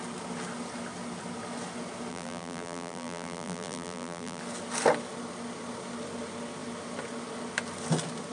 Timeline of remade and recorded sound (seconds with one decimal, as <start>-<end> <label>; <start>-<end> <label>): 0.0-2.1 recorded; 2.1-4.4 remade; 4.4-8.3 recorded